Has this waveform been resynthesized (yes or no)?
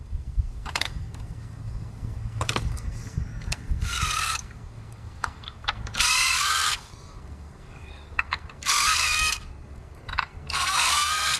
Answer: yes